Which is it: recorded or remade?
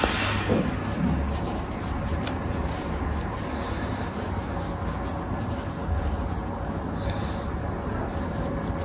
recorded